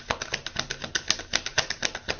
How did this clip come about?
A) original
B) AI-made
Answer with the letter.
A